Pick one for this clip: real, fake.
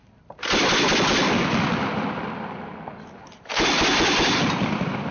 real